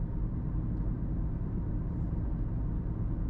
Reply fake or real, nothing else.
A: fake